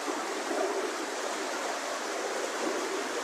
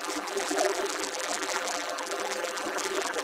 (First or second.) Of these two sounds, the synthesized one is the second